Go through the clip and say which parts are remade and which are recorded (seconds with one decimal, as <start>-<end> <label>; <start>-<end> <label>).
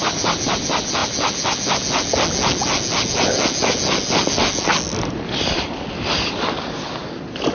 0.0-7.5 recorded